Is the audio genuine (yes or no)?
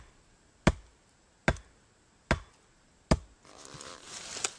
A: yes